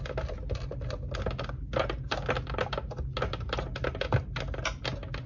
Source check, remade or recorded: recorded